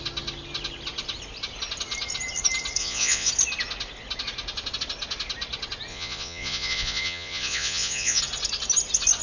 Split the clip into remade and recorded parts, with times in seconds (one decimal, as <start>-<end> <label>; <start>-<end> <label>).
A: 0.0-2.8 recorded; 2.8-3.3 remade; 3.3-5.9 recorded; 5.9-8.2 remade; 8.2-9.2 recorded